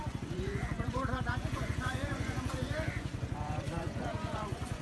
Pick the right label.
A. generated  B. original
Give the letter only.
A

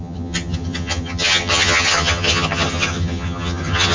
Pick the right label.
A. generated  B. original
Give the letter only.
A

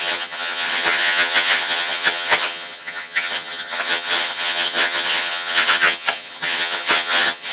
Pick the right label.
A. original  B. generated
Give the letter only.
B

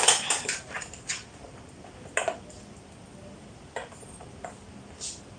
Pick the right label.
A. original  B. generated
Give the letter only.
A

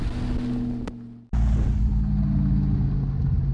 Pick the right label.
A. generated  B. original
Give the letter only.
B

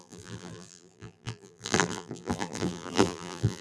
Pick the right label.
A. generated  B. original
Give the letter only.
A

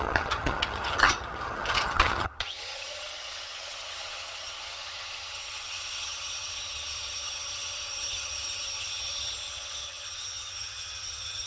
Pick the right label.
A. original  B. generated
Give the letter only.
B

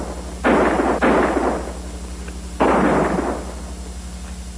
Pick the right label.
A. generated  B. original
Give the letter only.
B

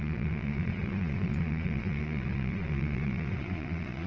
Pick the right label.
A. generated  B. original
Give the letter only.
A